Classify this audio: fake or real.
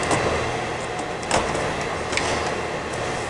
real